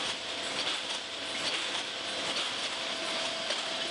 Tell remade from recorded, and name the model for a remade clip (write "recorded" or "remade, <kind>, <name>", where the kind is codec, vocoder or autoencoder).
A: recorded